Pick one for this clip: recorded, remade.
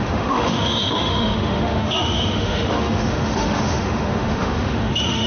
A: remade